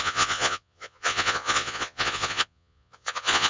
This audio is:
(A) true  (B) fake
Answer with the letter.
B